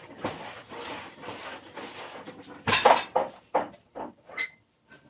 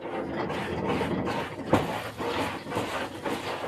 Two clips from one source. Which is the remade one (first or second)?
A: first